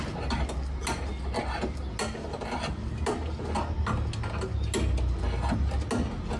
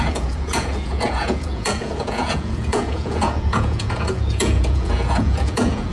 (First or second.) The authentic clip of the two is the first